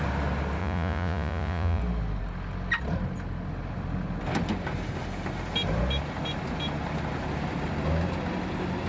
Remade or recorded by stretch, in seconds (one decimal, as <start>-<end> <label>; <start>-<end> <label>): 0.0-0.6 recorded; 0.6-1.8 remade; 1.8-8.9 recorded